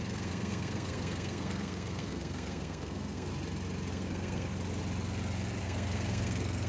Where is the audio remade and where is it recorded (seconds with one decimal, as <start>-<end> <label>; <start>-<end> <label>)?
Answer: 0.0-3.3 remade; 3.3-3.9 recorded; 3.9-4.5 remade; 4.5-5.6 recorded; 5.6-6.7 remade